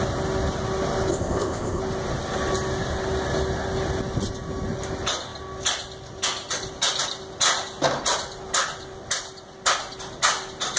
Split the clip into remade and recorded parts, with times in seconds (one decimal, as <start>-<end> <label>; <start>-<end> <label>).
0.0-1.1 recorded; 1.1-1.8 remade; 1.8-10.8 recorded